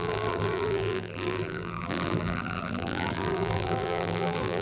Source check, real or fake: fake